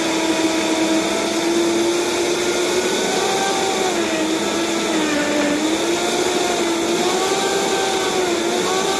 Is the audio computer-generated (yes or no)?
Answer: no